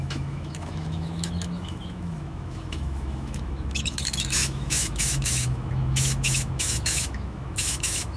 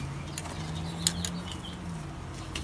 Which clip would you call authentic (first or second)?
second